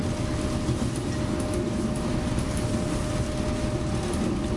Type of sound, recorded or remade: recorded